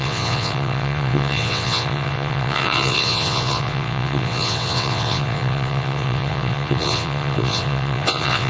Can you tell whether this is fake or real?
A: fake